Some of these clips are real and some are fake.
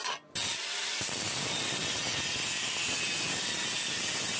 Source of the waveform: real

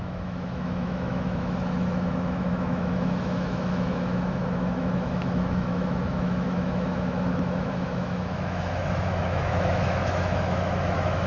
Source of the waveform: fake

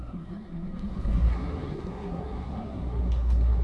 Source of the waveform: fake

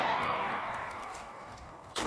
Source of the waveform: fake